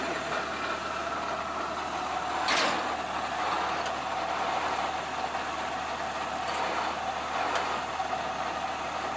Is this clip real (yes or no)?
yes